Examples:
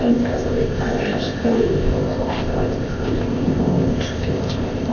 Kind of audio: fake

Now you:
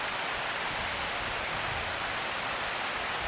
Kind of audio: real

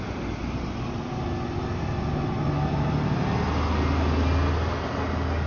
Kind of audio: real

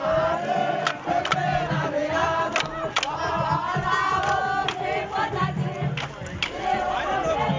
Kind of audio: real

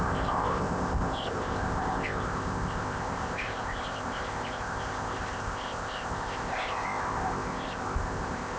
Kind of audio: fake